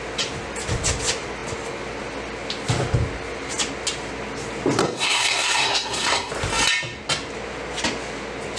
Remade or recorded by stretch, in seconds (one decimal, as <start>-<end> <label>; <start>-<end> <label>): 0.0-4.8 recorded; 4.8-6.3 remade; 6.3-8.6 recorded